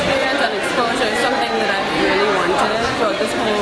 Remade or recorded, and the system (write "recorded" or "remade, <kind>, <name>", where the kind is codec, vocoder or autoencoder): recorded